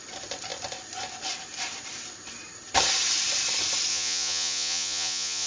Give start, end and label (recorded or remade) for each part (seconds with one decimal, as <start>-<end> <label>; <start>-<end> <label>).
0.0-3.9 recorded; 3.9-5.5 remade